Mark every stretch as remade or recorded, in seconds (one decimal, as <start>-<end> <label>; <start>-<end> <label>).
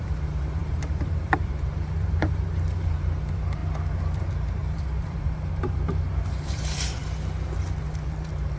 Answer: 0.0-3.6 remade; 3.6-4.1 recorded; 4.1-7.0 remade; 7.0-8.1 recorded; 8.1-8.6 remade